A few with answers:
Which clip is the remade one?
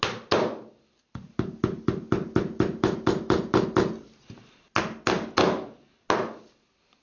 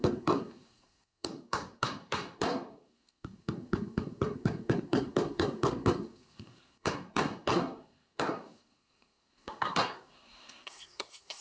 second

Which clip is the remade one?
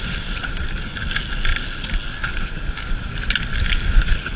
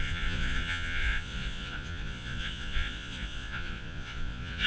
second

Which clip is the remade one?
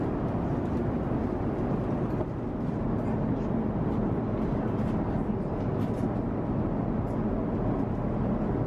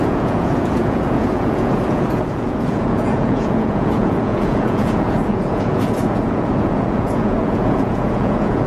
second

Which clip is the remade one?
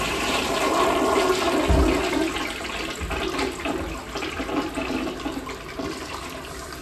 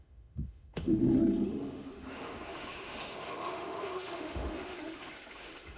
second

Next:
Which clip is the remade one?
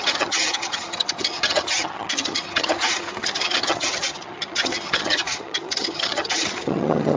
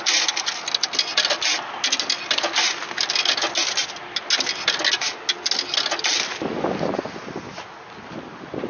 first